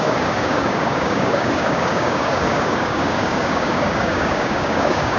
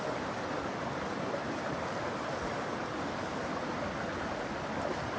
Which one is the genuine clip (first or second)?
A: second